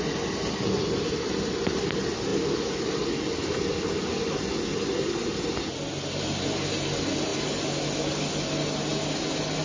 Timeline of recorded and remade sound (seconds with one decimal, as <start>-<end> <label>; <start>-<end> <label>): 0.0-9.6 recorded